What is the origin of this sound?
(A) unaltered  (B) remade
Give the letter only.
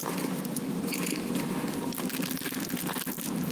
A